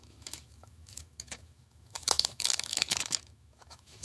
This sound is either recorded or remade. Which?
remade